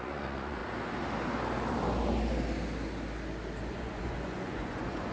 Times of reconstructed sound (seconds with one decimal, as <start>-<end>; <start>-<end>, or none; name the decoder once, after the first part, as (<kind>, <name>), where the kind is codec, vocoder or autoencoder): 0.0-0.6 (vocoder, Vocos); 3.7-5.1